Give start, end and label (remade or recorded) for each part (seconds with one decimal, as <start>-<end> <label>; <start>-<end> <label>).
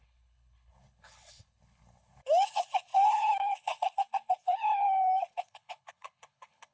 0.0-6.7 remade